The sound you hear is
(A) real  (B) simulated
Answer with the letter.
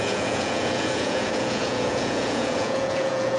B